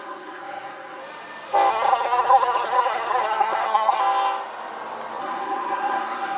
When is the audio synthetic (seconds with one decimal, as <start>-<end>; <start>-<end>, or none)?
0.0-1.0; 1.7-4.0; 5.2-6.4